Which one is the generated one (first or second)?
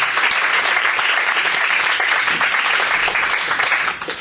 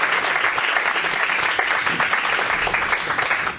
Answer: first